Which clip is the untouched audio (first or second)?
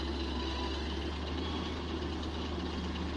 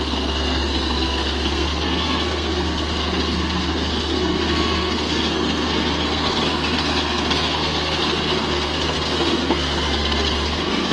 first